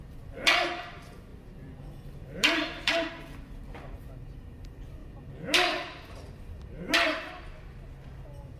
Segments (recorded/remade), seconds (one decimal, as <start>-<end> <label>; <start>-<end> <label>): 0.0-1.3 recorded; 1.3-3.1 remade; 3.1-5.0 recorded; 5.0-6.9 remade; 6.9-8.6 recorded